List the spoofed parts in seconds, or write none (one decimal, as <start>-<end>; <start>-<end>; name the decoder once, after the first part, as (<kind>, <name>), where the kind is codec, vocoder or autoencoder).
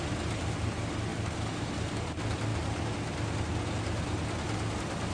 none